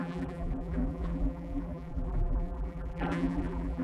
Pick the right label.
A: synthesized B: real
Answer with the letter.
A